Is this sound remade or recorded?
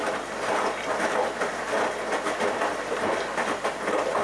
recorded